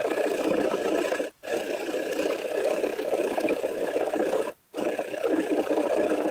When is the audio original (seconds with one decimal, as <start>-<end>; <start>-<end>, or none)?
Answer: 0.8-1.5